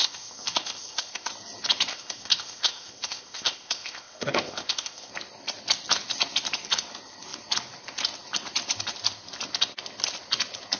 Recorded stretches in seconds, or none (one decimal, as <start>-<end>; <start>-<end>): 1.3-1.9; 5.1-10.8